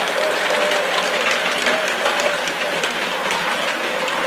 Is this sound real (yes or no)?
yes